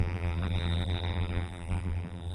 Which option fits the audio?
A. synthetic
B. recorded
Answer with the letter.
A